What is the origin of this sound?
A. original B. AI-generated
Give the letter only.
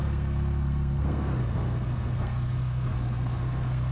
B